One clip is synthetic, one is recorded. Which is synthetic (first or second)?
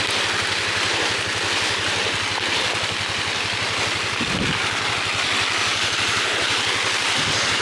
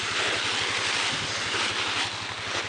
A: first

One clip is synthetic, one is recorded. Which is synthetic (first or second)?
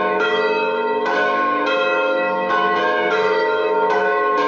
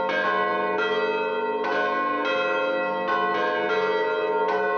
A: first